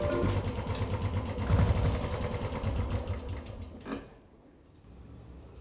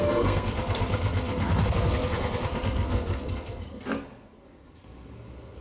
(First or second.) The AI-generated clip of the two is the second